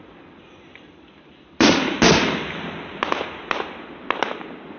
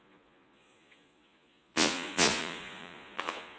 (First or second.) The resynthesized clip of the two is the second